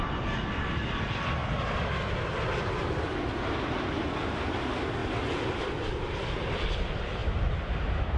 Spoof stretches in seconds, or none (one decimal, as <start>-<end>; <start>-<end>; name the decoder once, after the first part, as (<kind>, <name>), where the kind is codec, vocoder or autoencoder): none